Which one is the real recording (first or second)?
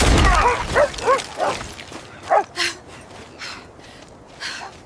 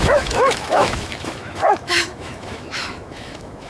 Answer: first